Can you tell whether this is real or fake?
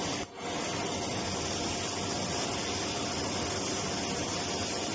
real